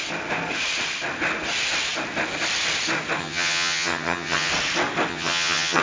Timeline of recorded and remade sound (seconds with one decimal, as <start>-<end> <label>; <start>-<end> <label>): 0.0-3.2 recorded; 3.2-4.5 remade; 4.5-5.1 recorded; 5.1-5.8 remade